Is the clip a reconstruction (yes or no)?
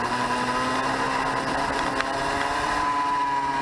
no